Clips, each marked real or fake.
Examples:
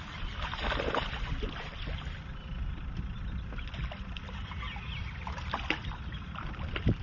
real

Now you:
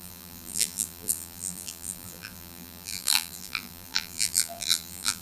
fake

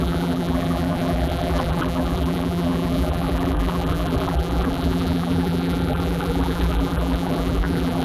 fake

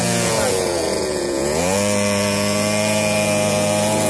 fake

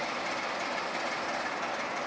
real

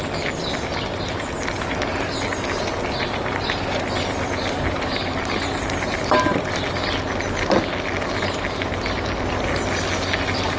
real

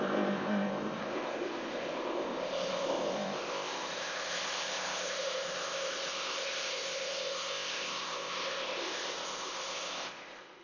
fake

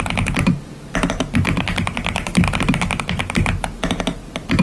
real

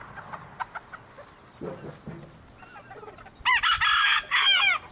real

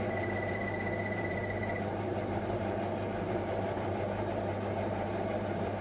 fake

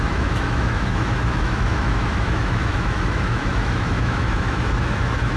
fake